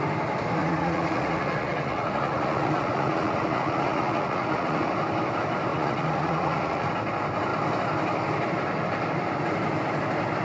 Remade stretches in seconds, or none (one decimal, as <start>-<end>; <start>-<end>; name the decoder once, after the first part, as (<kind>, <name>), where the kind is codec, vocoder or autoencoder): 0.6-4.9 (vocoder, Vocos); 5.7-6.9